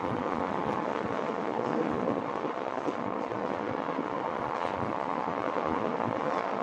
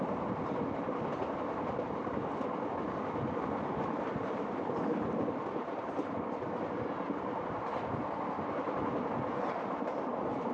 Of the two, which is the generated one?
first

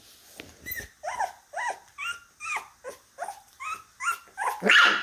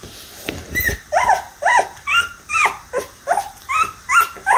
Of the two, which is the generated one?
second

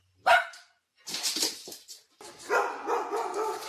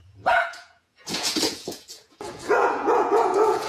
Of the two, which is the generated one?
second